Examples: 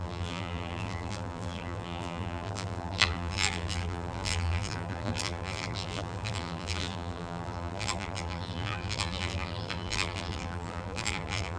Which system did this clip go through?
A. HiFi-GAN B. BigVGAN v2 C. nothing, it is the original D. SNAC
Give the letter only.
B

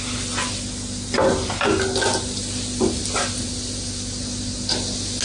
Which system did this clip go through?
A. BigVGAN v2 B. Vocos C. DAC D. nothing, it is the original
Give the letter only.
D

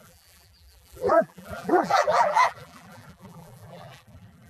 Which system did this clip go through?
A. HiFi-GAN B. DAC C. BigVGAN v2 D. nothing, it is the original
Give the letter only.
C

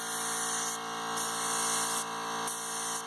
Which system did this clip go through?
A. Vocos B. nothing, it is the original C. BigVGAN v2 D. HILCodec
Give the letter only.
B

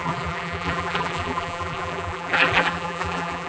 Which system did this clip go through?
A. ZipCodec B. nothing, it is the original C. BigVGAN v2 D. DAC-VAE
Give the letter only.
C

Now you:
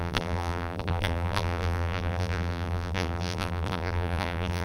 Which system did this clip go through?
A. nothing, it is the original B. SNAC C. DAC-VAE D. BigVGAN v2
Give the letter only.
D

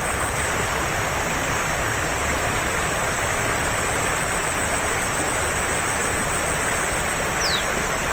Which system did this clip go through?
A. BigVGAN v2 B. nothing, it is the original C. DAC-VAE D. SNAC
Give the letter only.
B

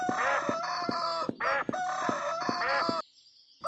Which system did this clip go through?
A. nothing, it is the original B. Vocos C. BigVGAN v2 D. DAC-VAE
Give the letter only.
A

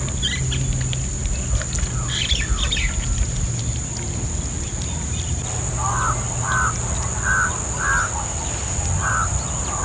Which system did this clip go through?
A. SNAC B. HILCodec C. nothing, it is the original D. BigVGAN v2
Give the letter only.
C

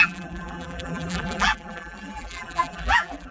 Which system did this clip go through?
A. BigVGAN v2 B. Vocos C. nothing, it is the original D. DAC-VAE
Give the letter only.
A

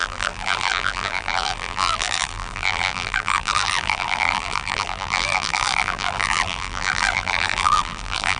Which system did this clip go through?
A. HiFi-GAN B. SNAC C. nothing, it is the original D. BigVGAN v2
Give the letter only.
D